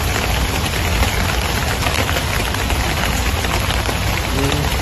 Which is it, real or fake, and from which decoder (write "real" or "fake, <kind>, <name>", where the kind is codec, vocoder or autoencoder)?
real